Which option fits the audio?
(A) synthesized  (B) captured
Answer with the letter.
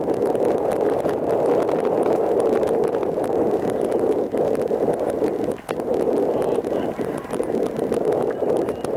B